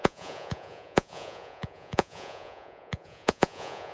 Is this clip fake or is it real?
fake